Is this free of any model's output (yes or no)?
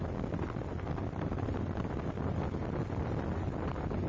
yes